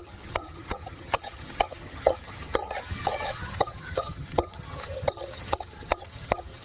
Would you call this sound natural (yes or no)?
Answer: no